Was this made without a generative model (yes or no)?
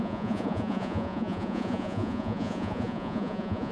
no